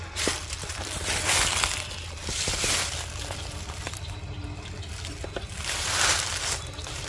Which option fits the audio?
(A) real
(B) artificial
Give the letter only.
A